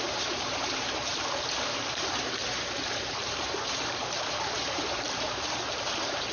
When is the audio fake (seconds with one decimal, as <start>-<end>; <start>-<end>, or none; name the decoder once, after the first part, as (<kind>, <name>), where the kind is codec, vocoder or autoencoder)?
0.0-1.1 (vocoder, BigVGAN v2); 2.0-6.3